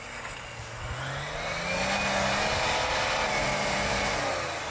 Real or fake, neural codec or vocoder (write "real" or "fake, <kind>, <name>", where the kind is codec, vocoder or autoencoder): real